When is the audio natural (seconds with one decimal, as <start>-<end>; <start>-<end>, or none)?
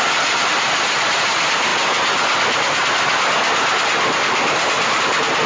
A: 0.0-5.5